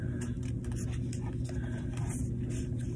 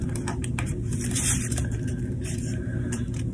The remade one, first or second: second